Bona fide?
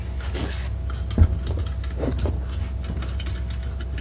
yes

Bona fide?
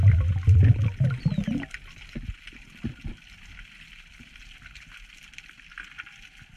yes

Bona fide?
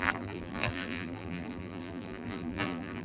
no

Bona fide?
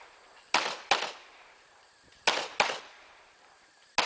yes